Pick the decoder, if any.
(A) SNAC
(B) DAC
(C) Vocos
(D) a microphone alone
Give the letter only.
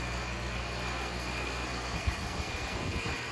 A